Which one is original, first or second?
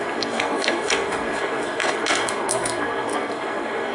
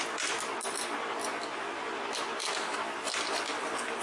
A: second